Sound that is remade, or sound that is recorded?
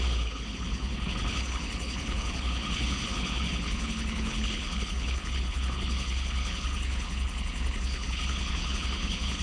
remade